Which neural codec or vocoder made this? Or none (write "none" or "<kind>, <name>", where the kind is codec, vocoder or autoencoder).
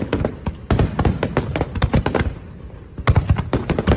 none